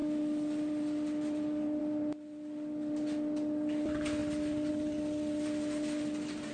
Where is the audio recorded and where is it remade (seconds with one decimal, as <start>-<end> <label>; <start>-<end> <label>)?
0.0-6.5 recorded